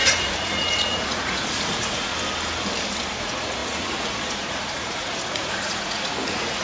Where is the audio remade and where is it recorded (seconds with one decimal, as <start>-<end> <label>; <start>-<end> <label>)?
0.0-2.1 remade; 2.1-3.2 recorded; 3.2-6.6 remade